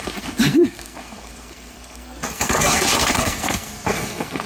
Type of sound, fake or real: fake